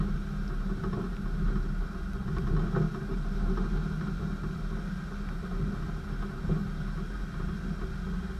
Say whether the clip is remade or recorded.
recorded